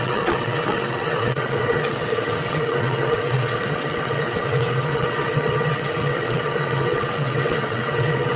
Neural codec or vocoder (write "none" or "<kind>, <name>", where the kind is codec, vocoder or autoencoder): vocoder, WaveNeXt